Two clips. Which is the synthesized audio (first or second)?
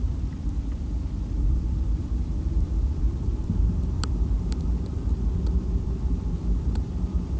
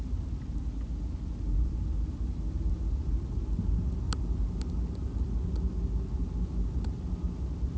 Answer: first